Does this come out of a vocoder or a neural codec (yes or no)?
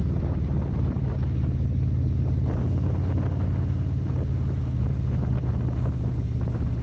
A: no